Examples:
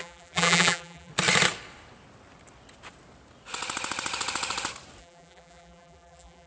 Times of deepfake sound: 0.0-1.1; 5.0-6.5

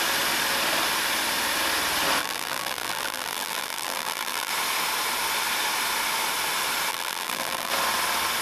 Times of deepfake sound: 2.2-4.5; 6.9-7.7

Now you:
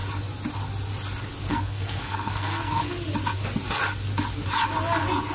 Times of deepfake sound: 1.5-2.9

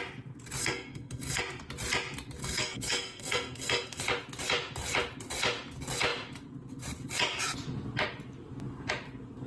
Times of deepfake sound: 0.6-1.4; 2.4-4.0

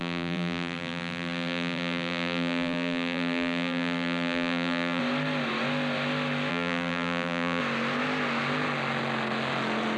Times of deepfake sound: 0.0-5.0; 6.5-7.6

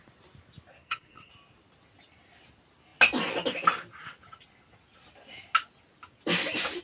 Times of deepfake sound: 0.8-1.3

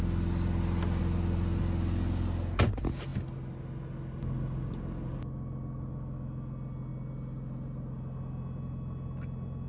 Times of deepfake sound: none

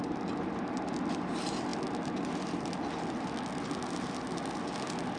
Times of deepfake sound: none